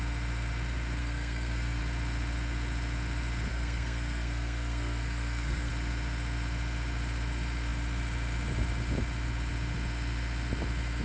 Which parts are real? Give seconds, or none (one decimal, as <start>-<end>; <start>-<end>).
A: 0.0-1.0; 1.8-3.5; 5.7-11.0